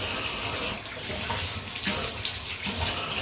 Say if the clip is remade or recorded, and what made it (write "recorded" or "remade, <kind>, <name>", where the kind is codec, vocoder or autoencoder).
recorded